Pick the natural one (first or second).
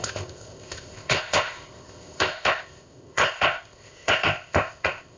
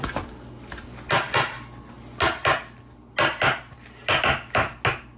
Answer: second